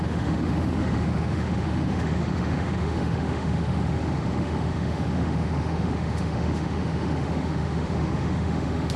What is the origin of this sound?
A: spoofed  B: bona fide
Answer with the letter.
A